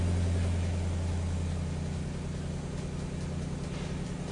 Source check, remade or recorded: recorded